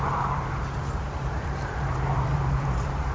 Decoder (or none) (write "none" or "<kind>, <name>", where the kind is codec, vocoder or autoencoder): vocoder, BigVGAN v2